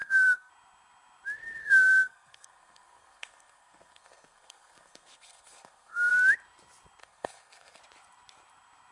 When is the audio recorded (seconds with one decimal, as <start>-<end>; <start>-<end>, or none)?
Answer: 0.5-1.6; 6.1-7.0; 7.8-8.9